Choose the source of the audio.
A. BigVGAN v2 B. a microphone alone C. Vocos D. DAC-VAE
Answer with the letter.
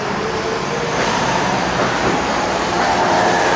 A